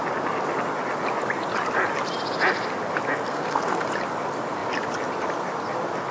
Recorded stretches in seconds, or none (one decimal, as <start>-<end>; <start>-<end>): 0.0-3.3; 3.9-6.1

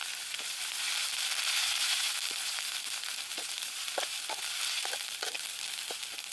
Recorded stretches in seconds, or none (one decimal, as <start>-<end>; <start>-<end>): 0.6-1.0; 2.3-3.3; 5.2-6.3

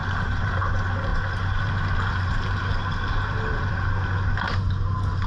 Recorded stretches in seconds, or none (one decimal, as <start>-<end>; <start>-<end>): 0.6-1.1; 3.7-5.3

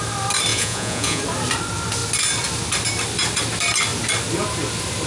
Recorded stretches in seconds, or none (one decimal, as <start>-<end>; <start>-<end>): 0.0-0.5; 1.2-5.1

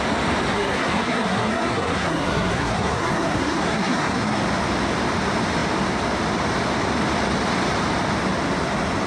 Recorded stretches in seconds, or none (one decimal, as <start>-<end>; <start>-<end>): 0.0-0.5; 4.4-9.1